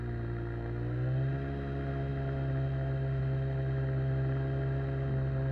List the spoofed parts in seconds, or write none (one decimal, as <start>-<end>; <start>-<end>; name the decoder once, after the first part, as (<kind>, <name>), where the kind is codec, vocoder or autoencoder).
none